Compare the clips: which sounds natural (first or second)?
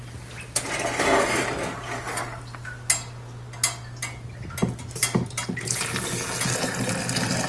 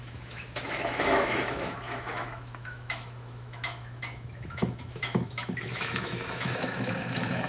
first